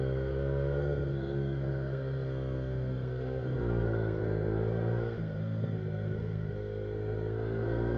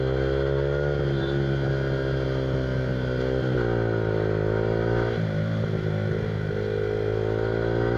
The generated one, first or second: first